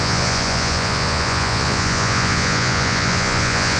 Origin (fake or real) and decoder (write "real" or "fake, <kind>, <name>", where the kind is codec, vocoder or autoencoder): fake, vocoder, Vocos